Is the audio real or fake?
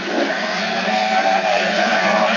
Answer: fake